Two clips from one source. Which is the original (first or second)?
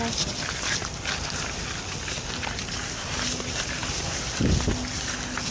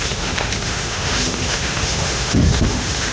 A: first